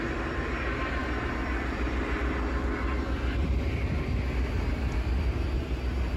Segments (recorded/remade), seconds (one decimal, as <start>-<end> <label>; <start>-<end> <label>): 0.0-6.2 recorded